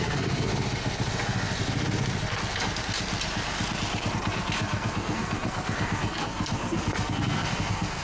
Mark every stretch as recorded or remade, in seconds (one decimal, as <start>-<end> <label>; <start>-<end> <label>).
0.0-0.5 remade; 0.5-4.3 recorded; 4.3-8.0 remade